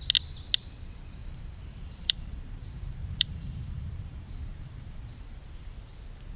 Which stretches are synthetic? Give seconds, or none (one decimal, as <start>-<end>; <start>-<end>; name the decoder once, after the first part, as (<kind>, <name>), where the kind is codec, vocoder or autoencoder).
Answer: 1.2-5.0 (vocoder, BigVGAN v2)